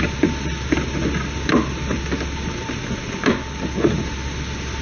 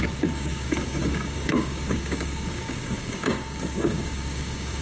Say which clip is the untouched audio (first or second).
first